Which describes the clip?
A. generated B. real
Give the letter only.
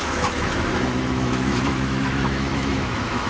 A